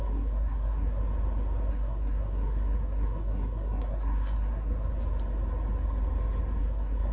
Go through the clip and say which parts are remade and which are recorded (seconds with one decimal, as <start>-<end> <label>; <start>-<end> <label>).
0.0-1.0 remade; 1.0-1.7 recorded; 1.7-4.9 remade; 4.9-6.6 recorded; 6.6-7.1 remade